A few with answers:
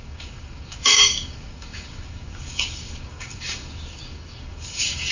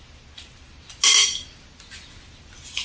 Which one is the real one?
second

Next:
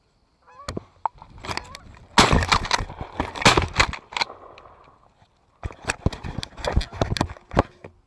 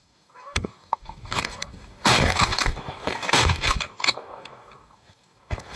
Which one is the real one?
first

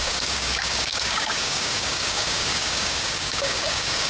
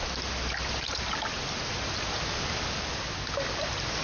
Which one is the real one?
second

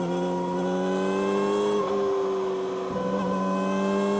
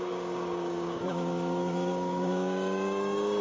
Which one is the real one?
first